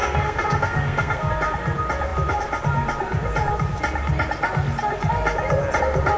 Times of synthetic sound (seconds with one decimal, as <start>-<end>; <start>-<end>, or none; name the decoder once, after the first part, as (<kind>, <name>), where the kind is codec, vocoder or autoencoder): 0.0-1.3 (codec, SNAC)